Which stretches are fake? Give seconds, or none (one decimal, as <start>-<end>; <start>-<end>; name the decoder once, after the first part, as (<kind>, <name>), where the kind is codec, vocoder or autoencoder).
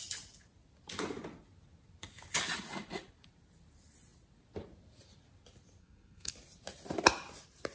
5.8-6.3 (codec, SNAC)